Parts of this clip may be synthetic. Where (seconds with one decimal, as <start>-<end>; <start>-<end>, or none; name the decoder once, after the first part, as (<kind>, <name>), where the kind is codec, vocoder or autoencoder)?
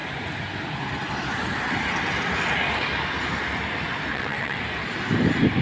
4.1-4.6 (vocoder, WaveNeXt)